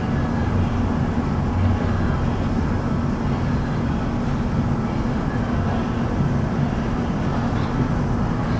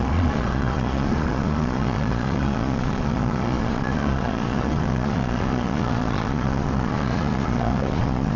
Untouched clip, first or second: first